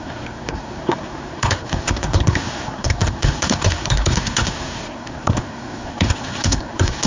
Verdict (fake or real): fake